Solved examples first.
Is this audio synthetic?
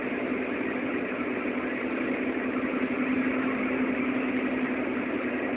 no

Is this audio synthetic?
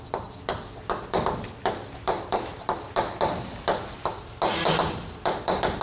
no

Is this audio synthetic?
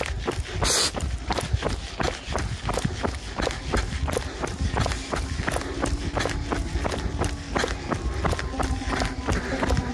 no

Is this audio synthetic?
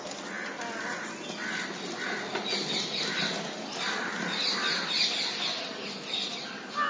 no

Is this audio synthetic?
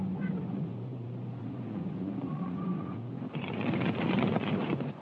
yes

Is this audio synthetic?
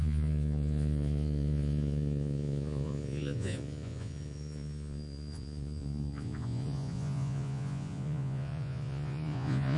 yes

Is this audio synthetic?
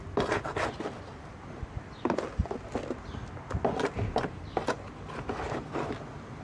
no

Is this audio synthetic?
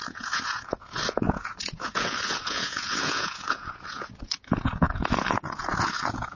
yes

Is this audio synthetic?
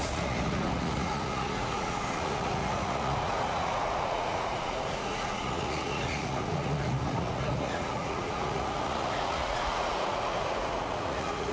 yes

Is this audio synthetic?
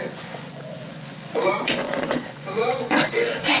yes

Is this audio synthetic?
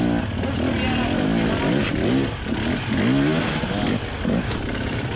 no